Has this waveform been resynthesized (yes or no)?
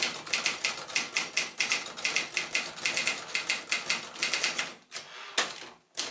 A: no